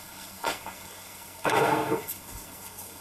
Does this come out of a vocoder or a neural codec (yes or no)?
yes